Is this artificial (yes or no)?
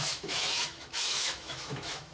yes